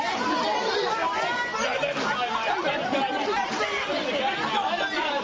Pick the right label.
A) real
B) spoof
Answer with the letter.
A